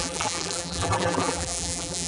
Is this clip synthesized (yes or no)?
yes